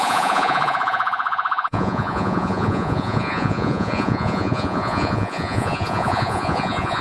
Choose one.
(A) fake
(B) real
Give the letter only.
A